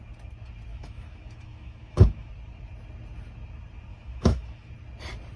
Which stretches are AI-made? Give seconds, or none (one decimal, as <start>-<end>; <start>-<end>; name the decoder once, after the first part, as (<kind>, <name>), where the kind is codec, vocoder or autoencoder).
0.7-2.3 (autoencoder, DAC-VAE); 3.9-4.7